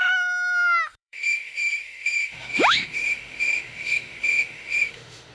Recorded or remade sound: remade